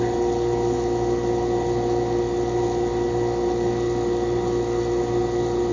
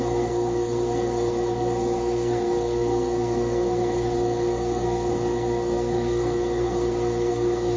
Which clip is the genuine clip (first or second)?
first